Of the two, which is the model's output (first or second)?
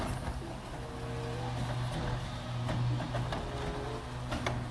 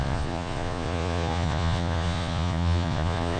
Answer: second